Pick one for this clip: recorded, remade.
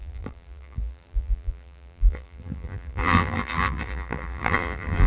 remade